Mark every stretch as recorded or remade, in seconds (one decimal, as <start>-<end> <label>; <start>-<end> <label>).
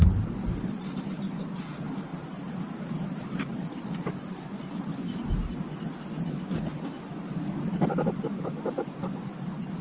0.0-2.1 recorded; 2.1-4.6 remade; 4.6-9.8 recorded